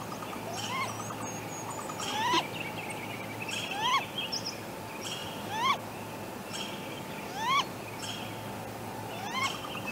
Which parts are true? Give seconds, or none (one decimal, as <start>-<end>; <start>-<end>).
0.0-9.9